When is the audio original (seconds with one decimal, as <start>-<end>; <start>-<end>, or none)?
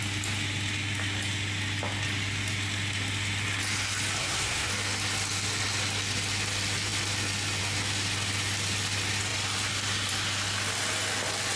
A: 0.0-4.2; 4.7-11.6